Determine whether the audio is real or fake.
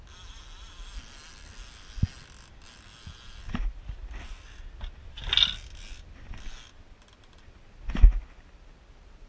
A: real